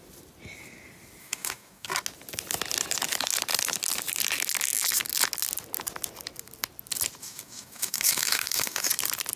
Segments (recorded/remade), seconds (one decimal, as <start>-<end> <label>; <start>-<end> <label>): 0.0-1.2 recorded; 1.2-1.9 remade; 1.9-7.2 recorded; 7.2-8.9 remade; 8.9-9.4 recorded

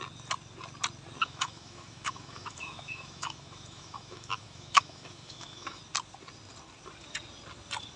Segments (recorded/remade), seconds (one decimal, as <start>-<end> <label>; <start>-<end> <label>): 0.0-1.2 recorded; 1.2-5.8 remade; 5.8-8.0 recorded

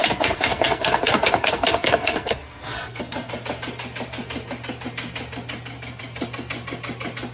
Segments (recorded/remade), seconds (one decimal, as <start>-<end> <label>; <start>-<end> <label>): 0.0-3.3 remade; 3.3-7.3 recorded

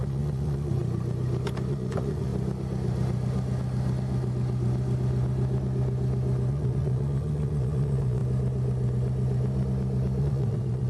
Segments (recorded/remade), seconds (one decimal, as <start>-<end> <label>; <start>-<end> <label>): 0.0-0.8 remade; 0.8-1.7 recorded; 1.7-2.3 remade; 2.3-6.5 recorded; 6.5-8.2 remade; 8.2-10.2 recorded; 10.2-10.9 remade

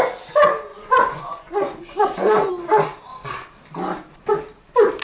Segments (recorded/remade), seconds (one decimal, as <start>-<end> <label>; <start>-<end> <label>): 0.0-0.7 recorded; 0.7-2.5 remade; 2.5-5.0 recorded

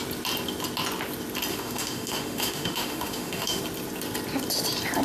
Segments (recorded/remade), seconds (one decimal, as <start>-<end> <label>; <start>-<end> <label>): 0.0-1.5 recorded; 1.5-3.6 remade; 3.6-5.0 recorded